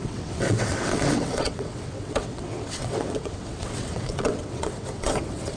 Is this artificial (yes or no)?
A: yes